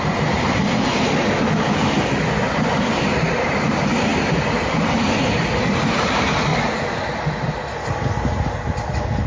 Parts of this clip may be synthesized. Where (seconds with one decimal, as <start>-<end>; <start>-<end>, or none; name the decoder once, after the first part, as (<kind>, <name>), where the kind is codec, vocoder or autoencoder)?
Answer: 0.0-0.6 (vocoder, BigVGAN v2); 3.0-6.5